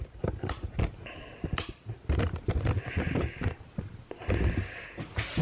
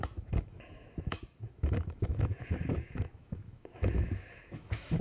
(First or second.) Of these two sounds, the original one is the first